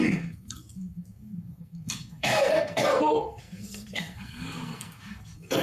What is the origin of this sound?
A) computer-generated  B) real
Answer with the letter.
A